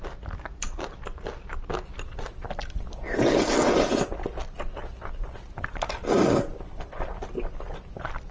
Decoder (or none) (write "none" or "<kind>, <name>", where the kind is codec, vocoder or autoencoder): none